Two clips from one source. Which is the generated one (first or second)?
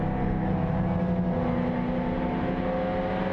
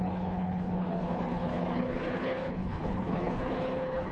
second